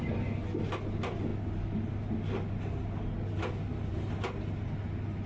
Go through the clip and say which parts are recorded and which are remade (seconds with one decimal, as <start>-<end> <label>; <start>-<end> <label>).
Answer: 0.0-5.3 recorded